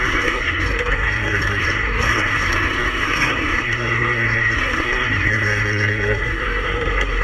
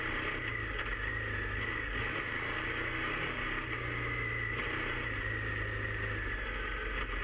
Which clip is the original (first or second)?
second